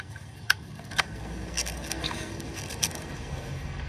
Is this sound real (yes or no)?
no